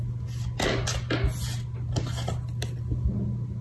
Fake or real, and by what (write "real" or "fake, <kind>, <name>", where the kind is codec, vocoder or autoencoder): real